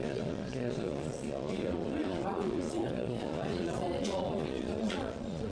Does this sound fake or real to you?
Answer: fake